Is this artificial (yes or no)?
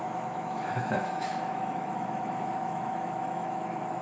yes